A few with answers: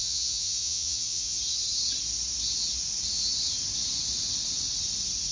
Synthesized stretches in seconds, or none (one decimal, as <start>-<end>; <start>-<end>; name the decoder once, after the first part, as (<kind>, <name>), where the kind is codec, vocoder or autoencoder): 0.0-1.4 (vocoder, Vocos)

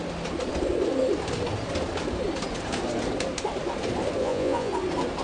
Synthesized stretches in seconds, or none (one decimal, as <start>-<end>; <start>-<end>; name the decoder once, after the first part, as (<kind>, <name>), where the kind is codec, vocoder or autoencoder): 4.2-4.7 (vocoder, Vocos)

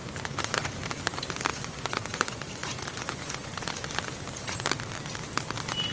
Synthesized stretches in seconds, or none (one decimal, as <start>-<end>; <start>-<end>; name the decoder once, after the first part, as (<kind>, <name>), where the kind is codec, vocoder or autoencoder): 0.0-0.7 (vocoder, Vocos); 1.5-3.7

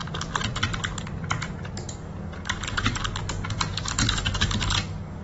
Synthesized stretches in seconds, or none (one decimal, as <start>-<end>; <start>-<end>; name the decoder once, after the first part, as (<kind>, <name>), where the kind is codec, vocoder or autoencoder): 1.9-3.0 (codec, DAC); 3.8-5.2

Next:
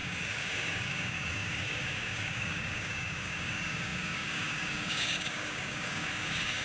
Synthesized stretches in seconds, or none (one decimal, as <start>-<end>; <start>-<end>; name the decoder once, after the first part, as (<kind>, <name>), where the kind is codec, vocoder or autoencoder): 0.0-6.6 (codec, DAC)

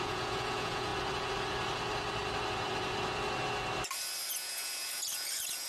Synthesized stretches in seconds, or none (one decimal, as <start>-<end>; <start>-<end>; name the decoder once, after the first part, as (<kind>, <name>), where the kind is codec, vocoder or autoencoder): 0.0-0.9 (vocoder, Vocos); 4.3-5.7

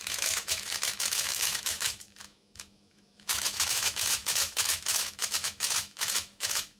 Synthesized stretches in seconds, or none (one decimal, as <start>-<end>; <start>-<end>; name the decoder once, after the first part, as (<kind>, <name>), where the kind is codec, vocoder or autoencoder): 0.0-6.8 (autoencoder, DAC-VAE)

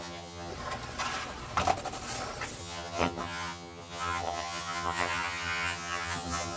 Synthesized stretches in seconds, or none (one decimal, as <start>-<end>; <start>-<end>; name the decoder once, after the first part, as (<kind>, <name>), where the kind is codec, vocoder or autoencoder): 0.0-0.5 (vocoder, HiFi-GAN); 2.6-6.6